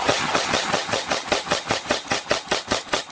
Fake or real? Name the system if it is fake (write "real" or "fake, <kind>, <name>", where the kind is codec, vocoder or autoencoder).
fake, vocoder, HiFi-GAN